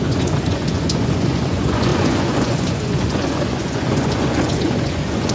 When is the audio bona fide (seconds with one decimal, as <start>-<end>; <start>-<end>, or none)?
none